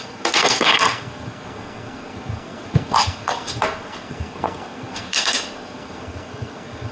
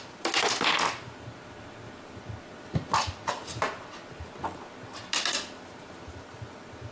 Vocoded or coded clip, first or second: first